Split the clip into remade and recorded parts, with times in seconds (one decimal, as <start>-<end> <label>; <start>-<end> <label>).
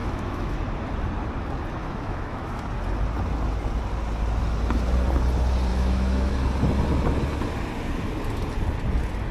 0.0-0.6 remade; 0.6-1.8 recorded; 1.8-2.7 remade; 2.7-5.7 recorded; 5.7-6.3 remade; 6.3-9.3 recorded